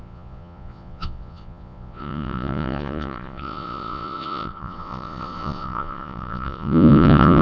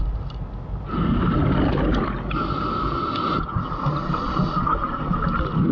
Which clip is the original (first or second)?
second